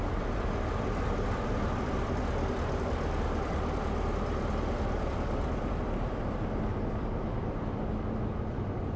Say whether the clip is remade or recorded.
remade